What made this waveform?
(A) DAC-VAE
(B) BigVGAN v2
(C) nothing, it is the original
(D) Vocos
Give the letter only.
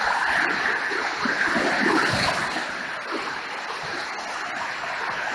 C